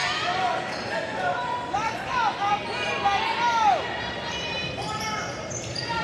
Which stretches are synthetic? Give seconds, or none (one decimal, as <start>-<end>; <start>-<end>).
none